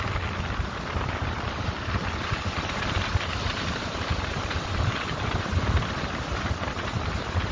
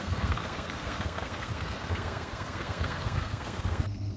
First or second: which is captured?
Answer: first